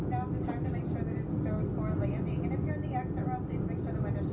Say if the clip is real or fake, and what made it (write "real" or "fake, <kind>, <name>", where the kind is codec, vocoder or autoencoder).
real